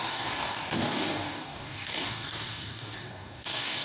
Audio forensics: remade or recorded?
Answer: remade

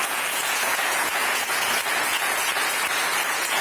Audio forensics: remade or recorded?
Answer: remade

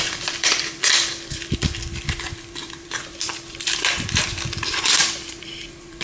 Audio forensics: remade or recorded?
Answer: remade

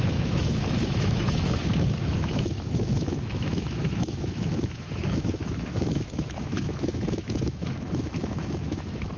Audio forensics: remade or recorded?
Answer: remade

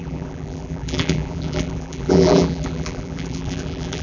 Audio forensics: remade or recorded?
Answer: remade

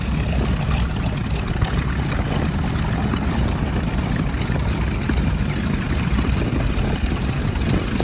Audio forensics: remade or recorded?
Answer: recorded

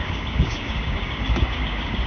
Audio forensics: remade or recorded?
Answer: remade